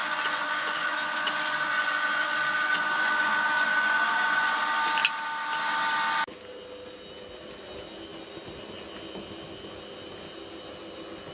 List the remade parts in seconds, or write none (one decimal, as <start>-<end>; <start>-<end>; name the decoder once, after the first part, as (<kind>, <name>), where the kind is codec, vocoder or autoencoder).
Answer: 0.0-4.6 (vocoder, Vocos)